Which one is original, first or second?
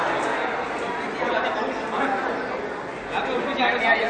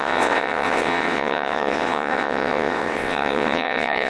first